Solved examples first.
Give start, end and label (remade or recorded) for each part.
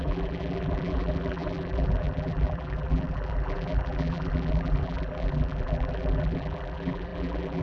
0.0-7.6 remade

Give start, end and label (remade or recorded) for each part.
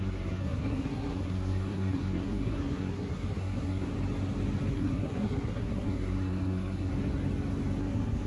0.0-3.9 remade; 3.9-4.7 recorded; 4.7-6.9 remade; 6.9-7.8 recorded; 7.8-8.3 remade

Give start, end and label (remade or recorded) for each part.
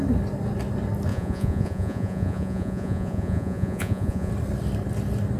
0.0-1.1 recorded; 1.1-4.3 remade; 4.3-5.4 recorded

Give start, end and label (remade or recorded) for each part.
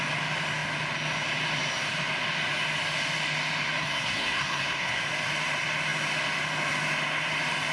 0.0-3.8 recorded; 3.8-5.0 remade; 5.0-7.7 recorded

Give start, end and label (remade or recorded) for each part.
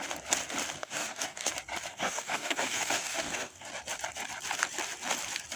0.0-0.8 recorded; 0.8-1.5 remade; 1.5-1.9 recorded; 1.9-3.7 remade; 3.7-5.6 recorded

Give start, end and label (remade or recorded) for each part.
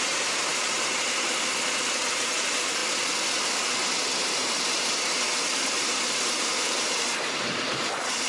0.0-2.8 remade; 2.8-4.2 recorded; 4.2-8.3 remade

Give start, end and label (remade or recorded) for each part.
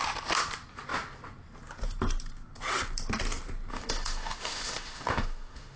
0.0-3.7 recorded; 3.7-5.8 remade